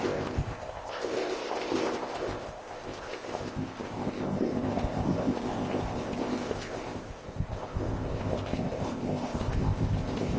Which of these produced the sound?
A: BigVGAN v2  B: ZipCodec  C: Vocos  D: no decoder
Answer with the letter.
B